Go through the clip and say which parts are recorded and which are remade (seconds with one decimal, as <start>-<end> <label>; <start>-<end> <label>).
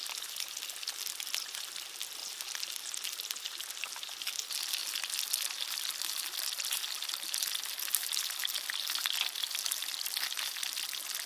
0.0-11.3 recorded